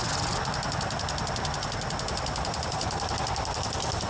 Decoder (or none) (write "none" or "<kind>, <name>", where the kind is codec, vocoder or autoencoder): none